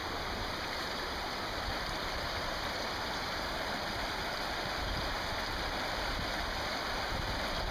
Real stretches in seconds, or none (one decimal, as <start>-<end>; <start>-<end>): 4.6-7.7